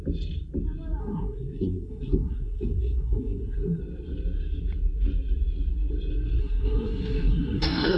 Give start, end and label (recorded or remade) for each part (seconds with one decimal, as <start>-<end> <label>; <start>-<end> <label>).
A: 0.0-1.0 recorded; 1.0-3.8 remade; 3.8-6.4 recorded; 6.4-8.0 remade